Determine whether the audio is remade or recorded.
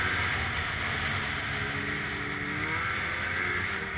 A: recorded